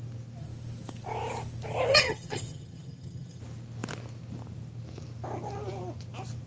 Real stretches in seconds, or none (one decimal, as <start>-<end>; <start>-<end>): 0.0-1.9; 3.4-6.5